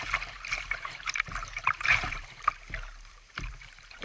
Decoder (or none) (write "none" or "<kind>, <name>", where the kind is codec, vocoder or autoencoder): vocoder, BigVGAN v2